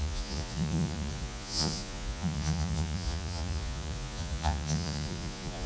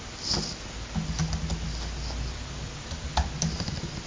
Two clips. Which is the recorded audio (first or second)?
second